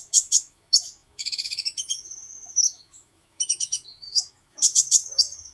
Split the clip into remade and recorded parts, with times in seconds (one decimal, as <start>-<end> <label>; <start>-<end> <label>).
0.0-5.5 remade